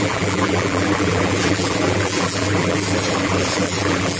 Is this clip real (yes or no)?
no